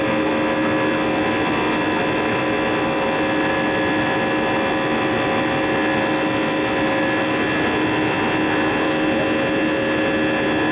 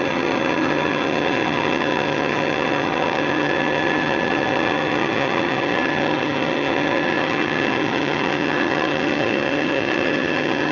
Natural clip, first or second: first